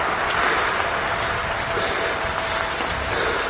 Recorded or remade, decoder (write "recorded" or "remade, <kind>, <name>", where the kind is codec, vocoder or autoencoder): recorded